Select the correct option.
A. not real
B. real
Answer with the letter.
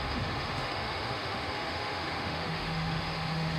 A